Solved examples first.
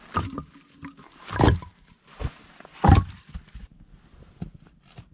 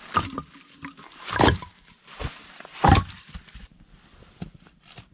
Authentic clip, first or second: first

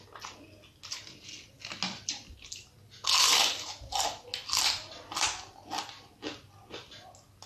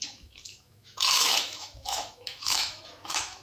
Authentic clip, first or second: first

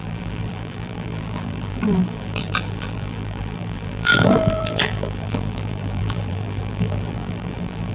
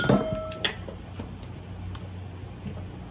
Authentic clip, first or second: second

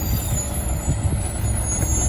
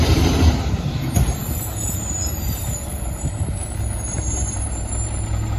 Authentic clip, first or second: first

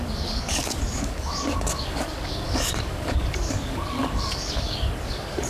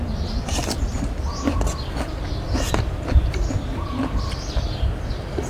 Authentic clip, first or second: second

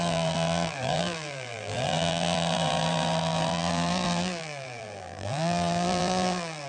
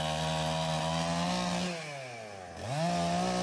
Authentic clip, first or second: second